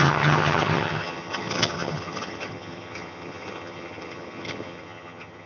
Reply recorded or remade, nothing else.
remade